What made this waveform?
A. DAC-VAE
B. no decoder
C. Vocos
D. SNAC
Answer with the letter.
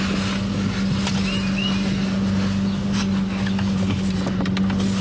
B